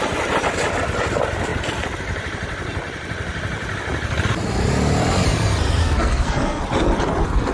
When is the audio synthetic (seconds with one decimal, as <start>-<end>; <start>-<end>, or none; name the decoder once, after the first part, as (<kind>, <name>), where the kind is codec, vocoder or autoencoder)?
5.8-6.6 (codec, SNAC)